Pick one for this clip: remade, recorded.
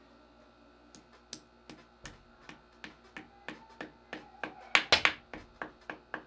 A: recorded